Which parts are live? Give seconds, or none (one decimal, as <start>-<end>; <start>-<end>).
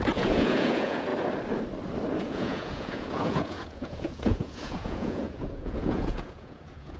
1.1-2.2